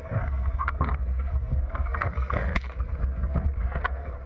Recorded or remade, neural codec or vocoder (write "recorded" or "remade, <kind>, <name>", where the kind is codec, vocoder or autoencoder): remade, codec, SNAC